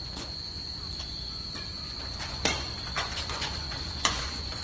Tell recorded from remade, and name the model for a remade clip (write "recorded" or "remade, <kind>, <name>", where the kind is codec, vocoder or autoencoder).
remade, vocoder, Vocos